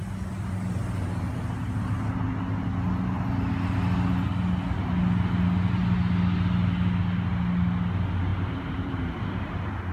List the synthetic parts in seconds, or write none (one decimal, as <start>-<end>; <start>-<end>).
8.3-9.1